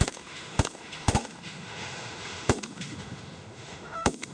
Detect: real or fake fake